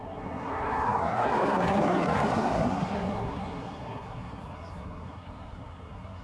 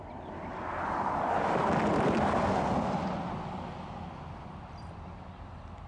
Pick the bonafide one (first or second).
second